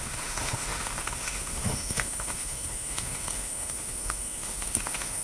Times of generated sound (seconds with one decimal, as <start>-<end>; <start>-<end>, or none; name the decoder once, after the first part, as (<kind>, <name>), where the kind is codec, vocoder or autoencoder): 0.0-5.2 (autoencoder, DAC-VAE)